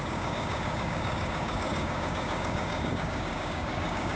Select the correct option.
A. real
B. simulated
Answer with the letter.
B